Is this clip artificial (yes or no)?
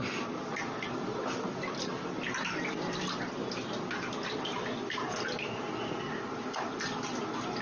no